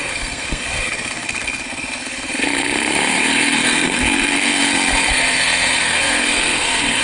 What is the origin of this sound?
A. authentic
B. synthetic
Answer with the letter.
B